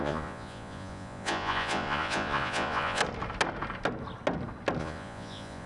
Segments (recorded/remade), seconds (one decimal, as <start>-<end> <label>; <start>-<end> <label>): 0.0-3.0 remade; 3.0-4.8 recorded; 4.8-5.7 remade